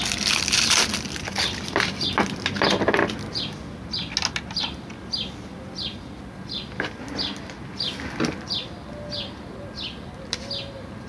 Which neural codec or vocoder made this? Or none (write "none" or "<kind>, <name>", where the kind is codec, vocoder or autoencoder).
none